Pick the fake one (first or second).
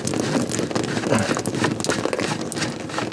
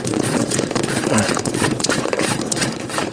second